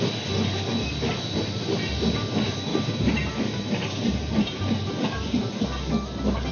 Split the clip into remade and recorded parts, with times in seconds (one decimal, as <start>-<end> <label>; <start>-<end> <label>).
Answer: 0.0-2.7 recorded; 2.7-5.5 remade; 5.5-6.5 recorded